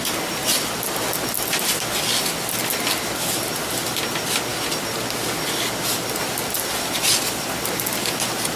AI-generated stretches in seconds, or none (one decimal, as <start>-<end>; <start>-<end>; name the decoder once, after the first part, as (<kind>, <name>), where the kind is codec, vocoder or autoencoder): none